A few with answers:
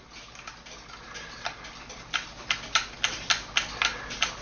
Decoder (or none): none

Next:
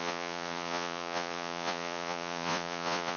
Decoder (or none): vocoder, Vocos